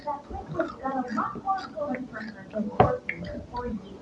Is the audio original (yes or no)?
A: yes